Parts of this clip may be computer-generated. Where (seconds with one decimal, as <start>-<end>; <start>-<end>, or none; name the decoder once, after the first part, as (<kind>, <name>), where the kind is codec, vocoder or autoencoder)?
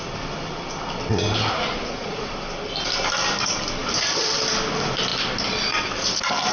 1.7-2.3 (vocoder, Vocos)